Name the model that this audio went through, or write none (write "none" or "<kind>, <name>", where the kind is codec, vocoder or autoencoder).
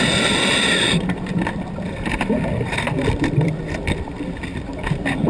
vocoder, BigVGAN v2